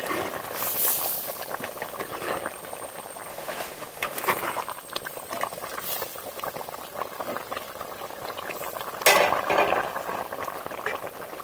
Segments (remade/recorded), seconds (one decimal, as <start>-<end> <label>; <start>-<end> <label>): 0.0-3.3 recorded; 3.3-4.2 remade; 4.2-11.4 recorded